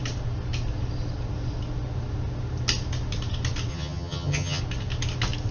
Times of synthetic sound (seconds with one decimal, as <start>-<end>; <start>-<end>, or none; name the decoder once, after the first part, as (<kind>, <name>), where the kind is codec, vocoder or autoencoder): 3.7-4.6 (vocoder, HiFi-GAN)